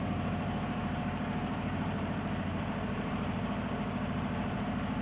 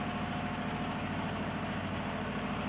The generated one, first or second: first